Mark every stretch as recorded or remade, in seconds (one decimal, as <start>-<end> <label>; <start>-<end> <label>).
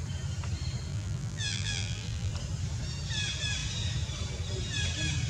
0.0-0.9 recorded; 0.9-2.3 remade; 2.3-5.3 recorded